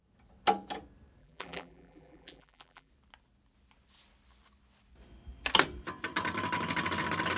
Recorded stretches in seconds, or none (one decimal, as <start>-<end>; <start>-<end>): 0.0-1.2; 2.9-7.4